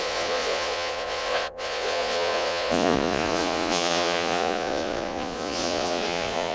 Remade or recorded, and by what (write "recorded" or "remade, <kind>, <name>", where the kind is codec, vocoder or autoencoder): remade, vocoder, Vocos